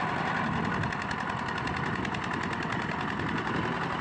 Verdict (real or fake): real